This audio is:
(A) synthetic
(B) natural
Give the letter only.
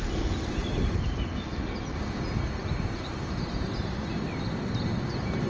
B